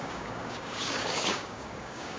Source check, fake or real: fake